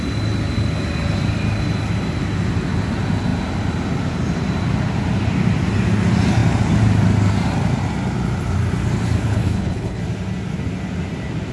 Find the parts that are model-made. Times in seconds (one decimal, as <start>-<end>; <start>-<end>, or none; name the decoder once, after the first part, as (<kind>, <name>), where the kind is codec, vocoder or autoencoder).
9.3-10.0 (codec, HILCodec)